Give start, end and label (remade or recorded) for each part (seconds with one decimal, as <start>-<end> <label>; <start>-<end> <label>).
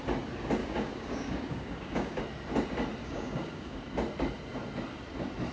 0.0-0.6 recorded; 0.6-2.2 remade; 2.2-3.0 recorded; 3.0-3.8 remade; 3.8-5.5 recorded